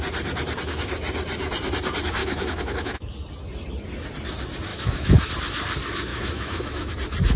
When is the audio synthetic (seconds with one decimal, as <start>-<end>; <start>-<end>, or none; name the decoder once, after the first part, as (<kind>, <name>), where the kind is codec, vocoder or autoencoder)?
2.2-3.1 (autoencoder, DAC-VAE); 4.7-5.3; 6.1-6.9